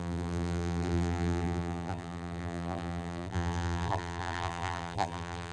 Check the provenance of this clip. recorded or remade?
remade